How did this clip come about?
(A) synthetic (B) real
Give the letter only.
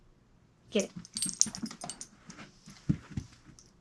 B